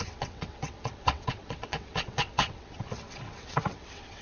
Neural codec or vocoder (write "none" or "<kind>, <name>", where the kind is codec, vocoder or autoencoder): vocoder, WaveNeXt